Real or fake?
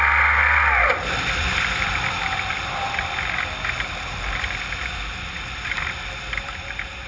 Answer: real